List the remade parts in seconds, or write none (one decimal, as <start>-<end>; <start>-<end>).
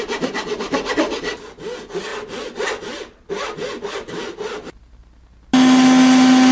2.1-3.3